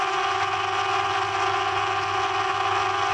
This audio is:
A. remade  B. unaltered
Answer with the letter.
B